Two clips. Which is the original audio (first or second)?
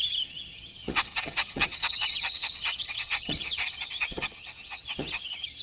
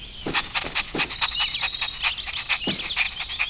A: second